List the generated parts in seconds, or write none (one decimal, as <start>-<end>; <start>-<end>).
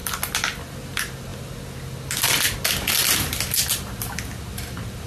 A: none